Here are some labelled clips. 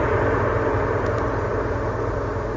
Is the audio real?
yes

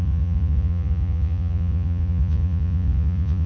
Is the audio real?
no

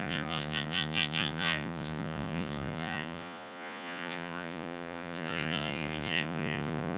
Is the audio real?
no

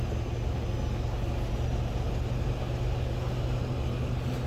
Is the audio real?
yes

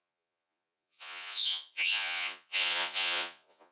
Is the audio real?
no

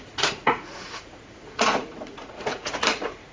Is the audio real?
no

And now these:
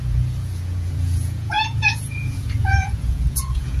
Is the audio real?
no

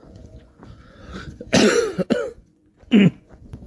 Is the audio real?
no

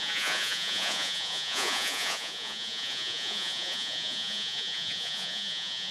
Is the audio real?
no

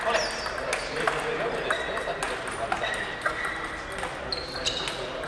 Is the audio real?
yes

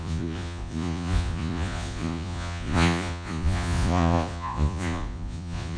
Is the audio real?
no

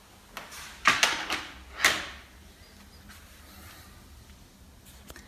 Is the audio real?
yes